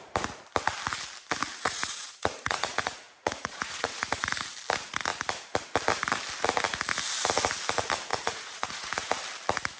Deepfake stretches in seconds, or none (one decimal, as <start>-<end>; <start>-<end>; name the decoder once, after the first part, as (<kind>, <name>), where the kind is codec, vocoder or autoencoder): 1.5-4.3 (vocoder, Vocos); 8.1-9.1